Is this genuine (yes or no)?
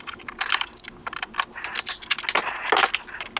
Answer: yes